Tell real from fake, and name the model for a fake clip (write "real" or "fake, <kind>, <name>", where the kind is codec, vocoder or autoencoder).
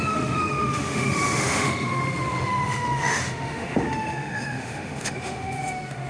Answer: fake, autoencoder, DAC-VAE